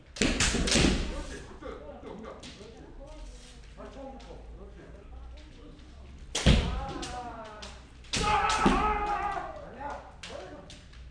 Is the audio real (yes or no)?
yes